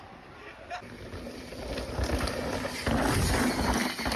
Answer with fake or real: real